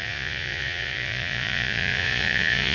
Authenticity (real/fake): fake